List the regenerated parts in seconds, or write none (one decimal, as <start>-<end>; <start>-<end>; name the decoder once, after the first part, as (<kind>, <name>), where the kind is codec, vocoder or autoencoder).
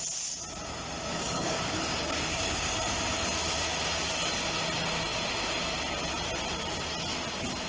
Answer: 1.1-2.8 (codec, DAC)